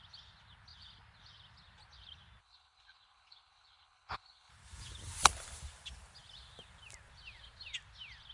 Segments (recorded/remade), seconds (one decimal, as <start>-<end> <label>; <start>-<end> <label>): 0.0-2.4 recorded; 2.4-4.5 remade; 4.5-8.3 recorded